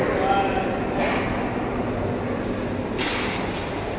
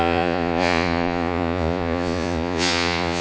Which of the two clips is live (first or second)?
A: first